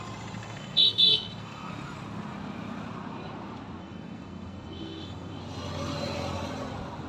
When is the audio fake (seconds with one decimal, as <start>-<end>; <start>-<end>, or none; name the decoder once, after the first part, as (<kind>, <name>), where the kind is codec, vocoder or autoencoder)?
0.4-1.7 (codec, SNAC); 3.8-5.4